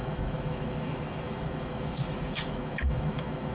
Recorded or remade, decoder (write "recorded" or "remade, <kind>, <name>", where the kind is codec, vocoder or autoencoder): remade, autoencoder, DAC-VAE